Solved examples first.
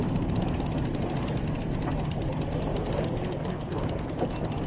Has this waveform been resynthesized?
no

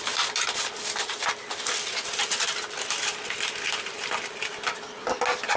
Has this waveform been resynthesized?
no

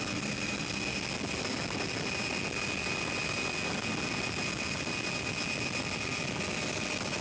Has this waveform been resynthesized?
no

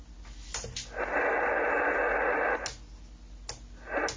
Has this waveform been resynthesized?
no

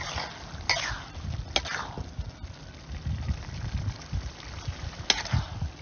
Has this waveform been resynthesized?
no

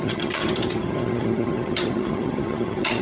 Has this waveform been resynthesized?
yes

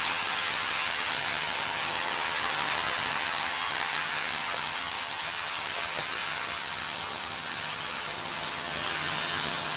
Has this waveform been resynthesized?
yes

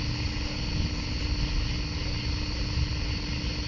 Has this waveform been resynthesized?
no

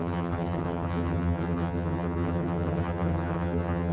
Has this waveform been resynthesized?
yes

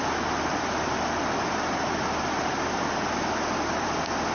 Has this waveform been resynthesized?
no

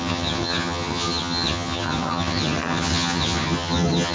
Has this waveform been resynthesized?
yes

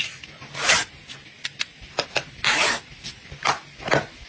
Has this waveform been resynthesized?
no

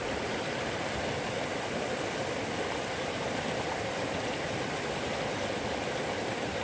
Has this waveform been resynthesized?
no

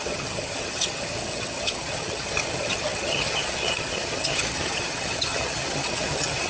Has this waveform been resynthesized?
yes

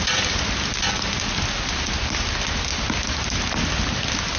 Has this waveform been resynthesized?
no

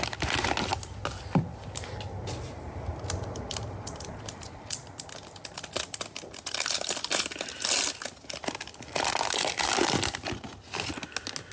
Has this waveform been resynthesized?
no